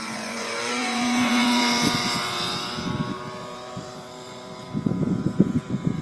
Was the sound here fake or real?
fake